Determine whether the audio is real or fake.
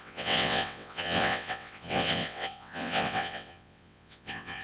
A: fake